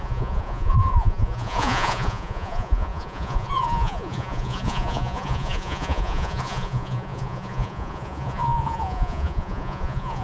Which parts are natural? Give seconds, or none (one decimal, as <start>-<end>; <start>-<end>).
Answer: none